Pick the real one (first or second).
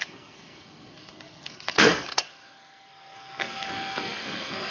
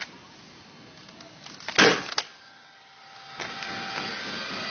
second